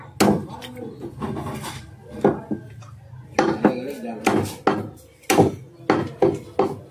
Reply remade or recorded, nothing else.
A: recorded